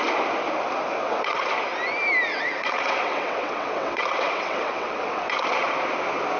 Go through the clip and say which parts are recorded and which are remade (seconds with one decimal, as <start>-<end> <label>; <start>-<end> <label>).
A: 0.0-1.0 recorded; 1.0-1.5 remade; 1.5-2.3 recorded; 2.3-5.4 remade; 5.4-6.4 recorded